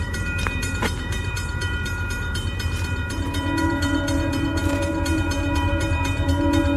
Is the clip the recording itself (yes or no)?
no